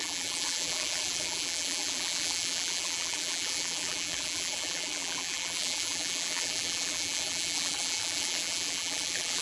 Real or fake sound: fake